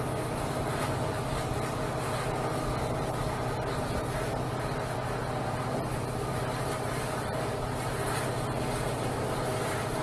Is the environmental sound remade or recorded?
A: recorded